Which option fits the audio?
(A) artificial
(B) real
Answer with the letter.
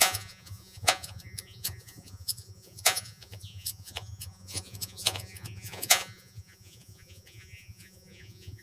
A